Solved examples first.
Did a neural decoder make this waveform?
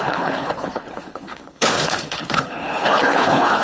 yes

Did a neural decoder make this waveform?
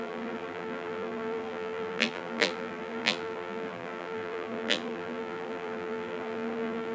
yes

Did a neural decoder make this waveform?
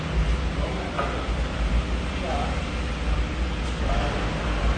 no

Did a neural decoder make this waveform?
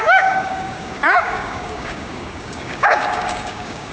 yes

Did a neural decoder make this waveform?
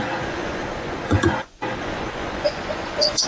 yes